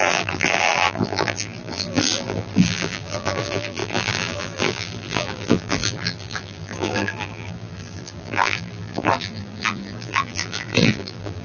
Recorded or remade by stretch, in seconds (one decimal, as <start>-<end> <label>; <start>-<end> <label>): 0.0-11.4 remade